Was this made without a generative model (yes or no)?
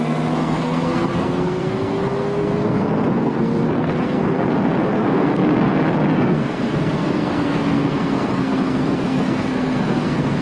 no